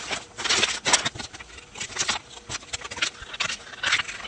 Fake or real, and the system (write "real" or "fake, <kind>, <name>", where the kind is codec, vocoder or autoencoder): real